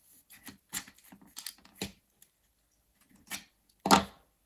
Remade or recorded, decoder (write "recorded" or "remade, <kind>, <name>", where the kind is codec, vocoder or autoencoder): recorded